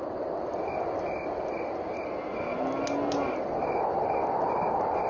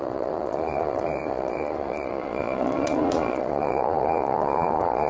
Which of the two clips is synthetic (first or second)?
second